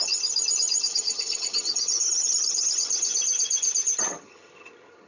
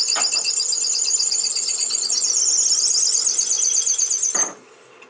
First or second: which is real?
second